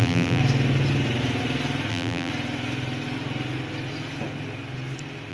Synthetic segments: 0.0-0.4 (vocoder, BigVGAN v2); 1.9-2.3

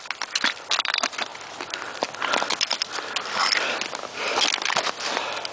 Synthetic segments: none

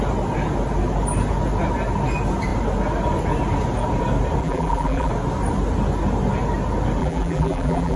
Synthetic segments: 4.4-5.1 (vocoder, BigVGAN v2); 7.0-8.0

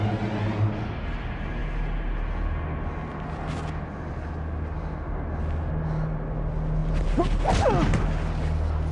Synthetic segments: none

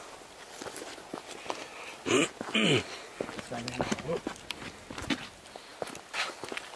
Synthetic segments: none

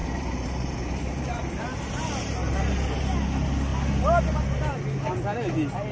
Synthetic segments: 0.0-1.5 (vocoder, BigVGAN v2)

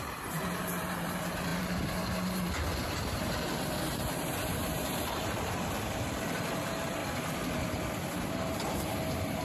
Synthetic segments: 0.0-7.0 (vocoder, BigVGAN v2); 8.3-9.4

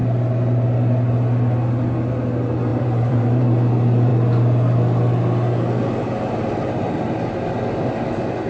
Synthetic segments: 2.7-3.5 (vocoder, BigVGAN v2)